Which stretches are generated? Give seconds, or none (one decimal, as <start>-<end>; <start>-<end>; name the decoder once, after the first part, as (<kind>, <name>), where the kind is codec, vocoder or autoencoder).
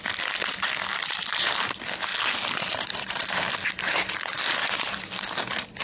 none